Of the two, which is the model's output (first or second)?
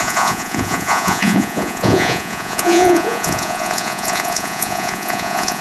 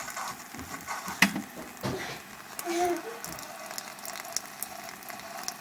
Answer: first